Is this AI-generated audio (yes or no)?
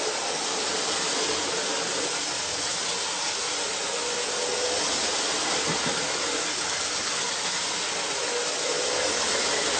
no